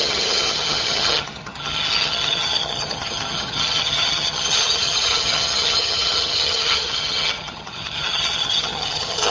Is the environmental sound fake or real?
fake